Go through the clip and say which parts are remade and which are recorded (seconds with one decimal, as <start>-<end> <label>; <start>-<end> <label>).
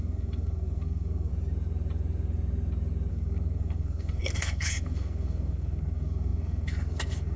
0.0-1.3 remade; 1.3-3.1 recorded; 3.1-7.4 remade